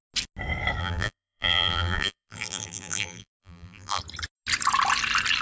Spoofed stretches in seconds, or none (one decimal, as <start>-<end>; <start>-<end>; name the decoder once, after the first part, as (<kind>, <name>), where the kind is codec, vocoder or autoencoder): 0.8-4.0 (vocoder, BigVGAN v2)